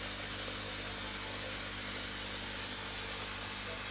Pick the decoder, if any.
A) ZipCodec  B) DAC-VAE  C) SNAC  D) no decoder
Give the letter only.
D